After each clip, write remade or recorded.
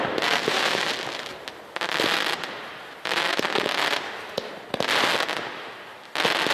recorded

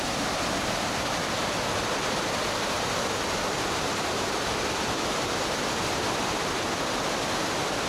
remade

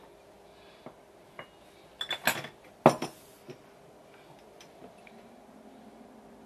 recorded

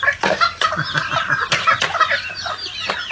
recorded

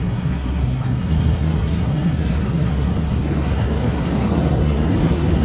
remade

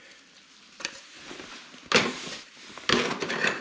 recorded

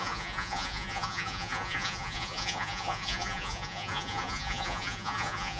remade